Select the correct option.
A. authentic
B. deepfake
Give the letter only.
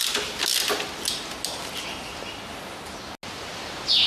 A